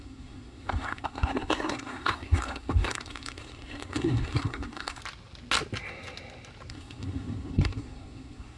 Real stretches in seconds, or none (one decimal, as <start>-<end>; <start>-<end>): 5.0-6.7